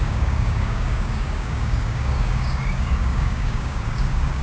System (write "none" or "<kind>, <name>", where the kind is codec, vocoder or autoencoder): codec, DAC